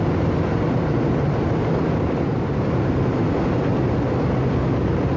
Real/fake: real